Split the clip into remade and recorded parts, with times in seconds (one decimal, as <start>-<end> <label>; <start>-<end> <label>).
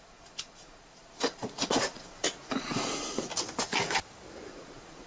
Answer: 0.0-3.3 remade; 3.3-4.5 recorded; 4.5-5.1 remade